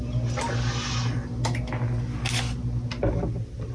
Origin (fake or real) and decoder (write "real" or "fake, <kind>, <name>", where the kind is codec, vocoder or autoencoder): real